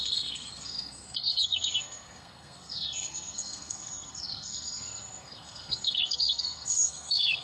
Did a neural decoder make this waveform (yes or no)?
yes